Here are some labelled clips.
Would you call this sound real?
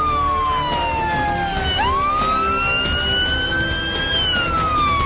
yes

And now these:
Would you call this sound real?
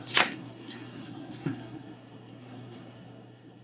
no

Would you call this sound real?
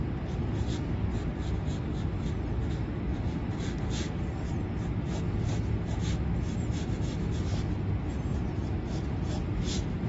yes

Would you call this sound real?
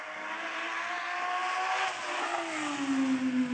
yes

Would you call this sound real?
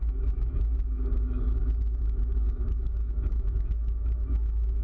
no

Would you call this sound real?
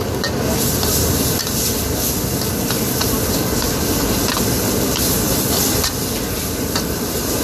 yes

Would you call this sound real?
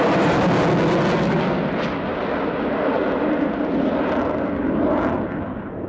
yes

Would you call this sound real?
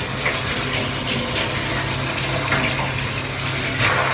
yes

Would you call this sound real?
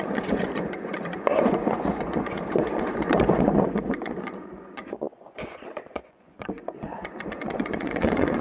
no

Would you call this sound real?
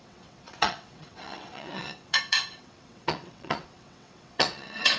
no